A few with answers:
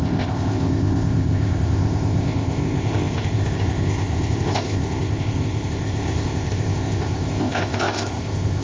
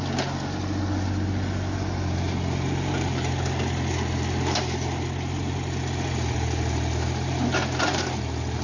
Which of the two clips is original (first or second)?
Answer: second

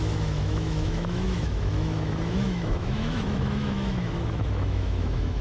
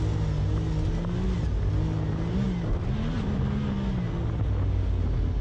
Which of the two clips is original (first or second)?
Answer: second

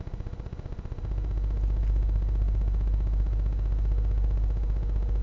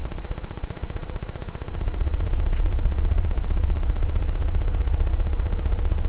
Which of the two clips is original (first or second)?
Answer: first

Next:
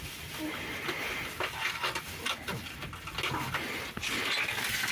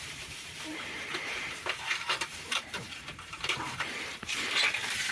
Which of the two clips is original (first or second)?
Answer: first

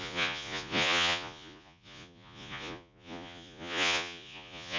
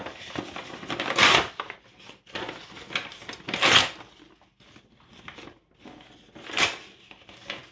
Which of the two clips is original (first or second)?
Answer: second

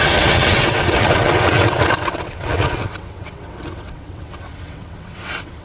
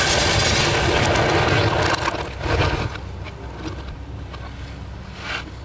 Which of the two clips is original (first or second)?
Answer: second